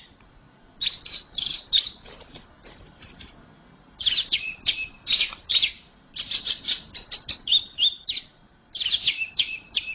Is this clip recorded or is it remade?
remade